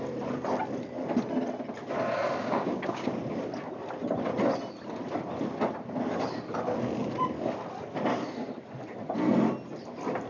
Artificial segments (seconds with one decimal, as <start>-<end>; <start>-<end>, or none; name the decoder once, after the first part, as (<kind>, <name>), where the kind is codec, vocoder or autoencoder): 2.4-3.2 (codec, DAC)